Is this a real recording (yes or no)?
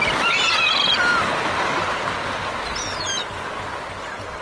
yes